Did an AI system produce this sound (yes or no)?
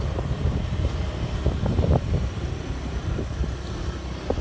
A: yes